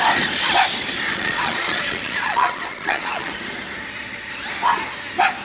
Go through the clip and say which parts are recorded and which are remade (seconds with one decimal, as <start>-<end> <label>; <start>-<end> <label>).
0.0-1.1 recorded; 1.1-3.3 remade; 3.3-5.4 recorded